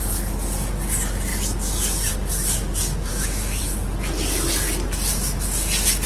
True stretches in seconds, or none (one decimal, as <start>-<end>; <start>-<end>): 0.0-3.1; 3.6-6.1